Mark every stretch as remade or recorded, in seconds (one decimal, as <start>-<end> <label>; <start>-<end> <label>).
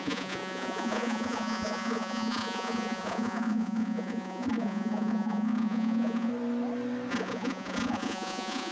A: 0.0-6.3 remade; 6.3-7.1 recorded; 7.1-8.7 remade